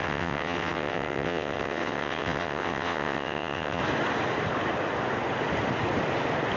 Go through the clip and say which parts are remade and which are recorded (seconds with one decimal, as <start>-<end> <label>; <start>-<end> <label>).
0.0-3.8 remade; 3.8-6.6 recorded